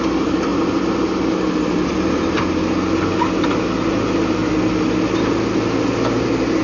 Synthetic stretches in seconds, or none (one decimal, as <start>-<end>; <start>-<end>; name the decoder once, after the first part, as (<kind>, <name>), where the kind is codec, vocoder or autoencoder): none